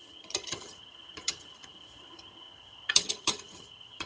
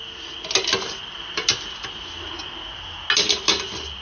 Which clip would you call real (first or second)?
second